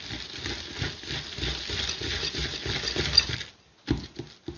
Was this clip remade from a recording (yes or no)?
no